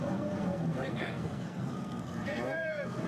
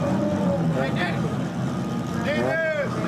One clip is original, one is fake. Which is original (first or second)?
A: second